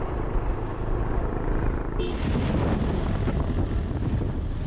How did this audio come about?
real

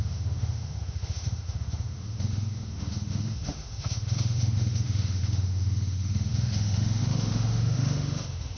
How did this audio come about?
fake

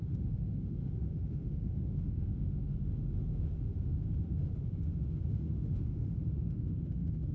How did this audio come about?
fake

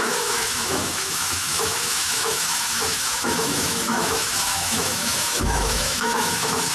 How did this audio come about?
fake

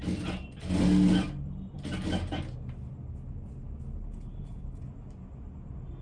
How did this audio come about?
real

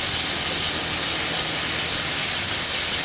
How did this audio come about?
real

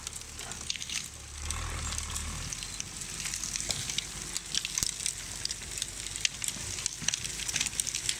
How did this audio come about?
real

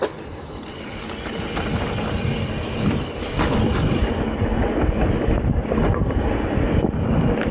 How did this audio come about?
real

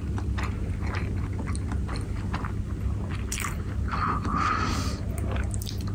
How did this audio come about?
real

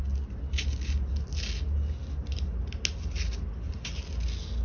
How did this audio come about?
real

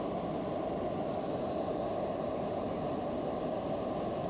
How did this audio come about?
real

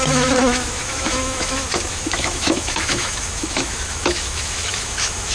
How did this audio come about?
fake